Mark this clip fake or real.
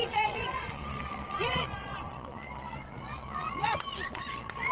fake